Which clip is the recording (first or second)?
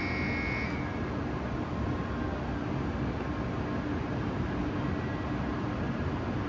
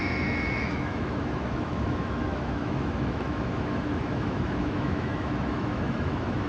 first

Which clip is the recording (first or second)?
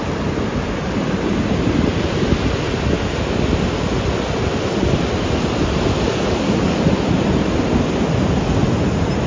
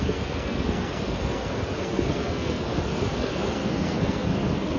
first